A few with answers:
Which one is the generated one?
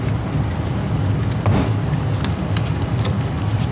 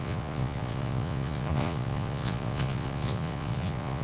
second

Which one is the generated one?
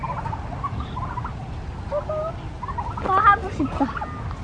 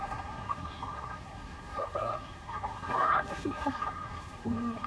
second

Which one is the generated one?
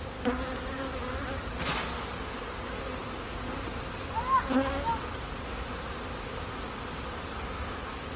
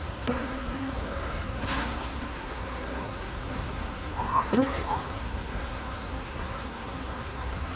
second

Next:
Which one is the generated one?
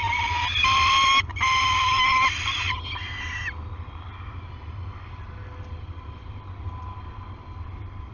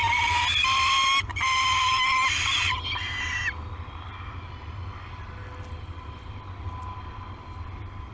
first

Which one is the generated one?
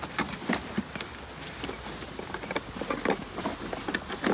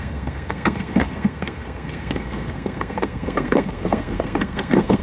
second